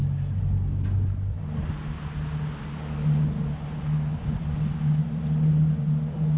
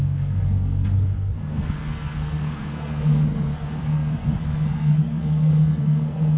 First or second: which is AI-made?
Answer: second